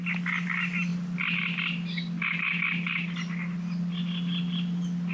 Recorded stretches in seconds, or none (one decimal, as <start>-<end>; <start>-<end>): 0.0-5.1